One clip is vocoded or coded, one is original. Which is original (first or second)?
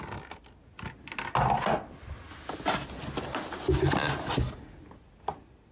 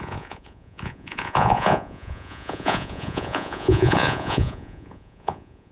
first